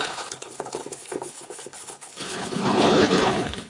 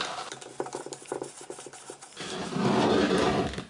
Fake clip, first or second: first